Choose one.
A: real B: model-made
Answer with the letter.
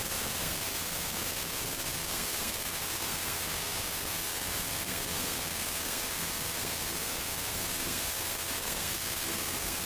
B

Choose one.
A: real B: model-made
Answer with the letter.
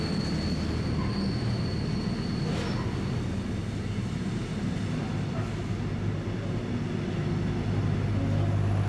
A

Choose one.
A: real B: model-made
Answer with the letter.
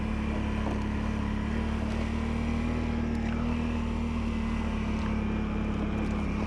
A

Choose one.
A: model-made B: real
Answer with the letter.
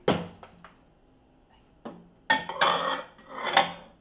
B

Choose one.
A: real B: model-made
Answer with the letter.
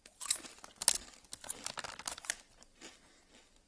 A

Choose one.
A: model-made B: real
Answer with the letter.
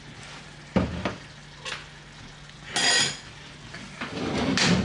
B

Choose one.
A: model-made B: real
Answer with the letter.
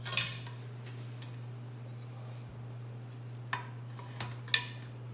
B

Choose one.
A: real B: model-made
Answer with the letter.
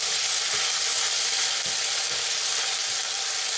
A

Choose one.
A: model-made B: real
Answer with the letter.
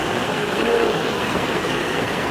A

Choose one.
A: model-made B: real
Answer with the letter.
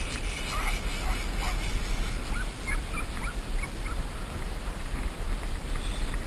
B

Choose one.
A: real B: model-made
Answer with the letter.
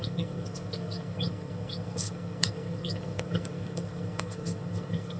B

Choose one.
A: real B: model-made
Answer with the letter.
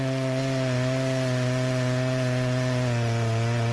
A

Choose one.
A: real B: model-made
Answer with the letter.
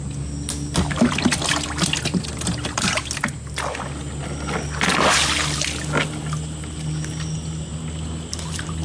A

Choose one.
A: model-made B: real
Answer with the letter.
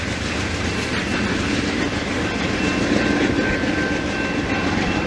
B